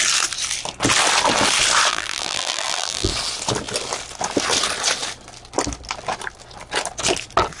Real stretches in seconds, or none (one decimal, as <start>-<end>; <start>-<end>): 0.0-1.9; 3.1-7.6